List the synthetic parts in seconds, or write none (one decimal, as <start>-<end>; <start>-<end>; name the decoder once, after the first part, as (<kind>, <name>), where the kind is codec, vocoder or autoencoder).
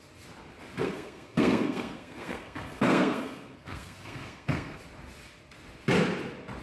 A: 0.8-4.8 (codec, SNAC)